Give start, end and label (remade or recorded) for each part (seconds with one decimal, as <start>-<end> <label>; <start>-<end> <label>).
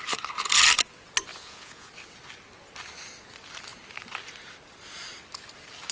0.0-1.3 recorded; 1.3-1.9 remade; 1.9-5.9 recorded